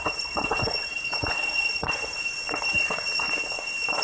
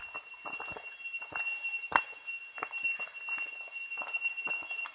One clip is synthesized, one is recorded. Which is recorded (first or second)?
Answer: second